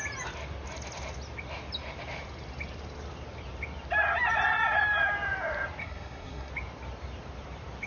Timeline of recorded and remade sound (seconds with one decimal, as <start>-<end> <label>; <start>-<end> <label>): 0.0-5.8 recorded; 5.8-6.5 remade; 6.5-7.9 recorded